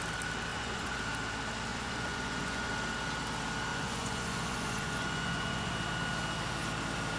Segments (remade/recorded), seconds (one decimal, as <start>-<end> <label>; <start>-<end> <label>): 0.0-0.5 recorded; 0.5-1.0 remade; 1.0-1.7 recorded; 1.7-2.7 remade; 2.7-3.7 recorded; 3.7-5.7 remade; 5.7-7.2 recorded